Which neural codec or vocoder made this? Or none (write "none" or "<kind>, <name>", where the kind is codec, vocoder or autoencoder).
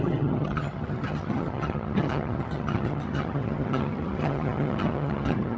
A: vocoder, HiFi-GAN